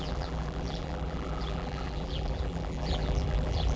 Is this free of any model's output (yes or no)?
no